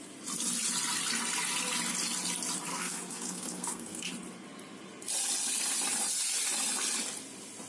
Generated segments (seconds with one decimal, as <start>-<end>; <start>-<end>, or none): 2.7-4.1